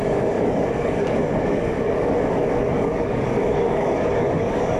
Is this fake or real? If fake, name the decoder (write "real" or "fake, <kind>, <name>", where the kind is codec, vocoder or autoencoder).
fake, codec, DAC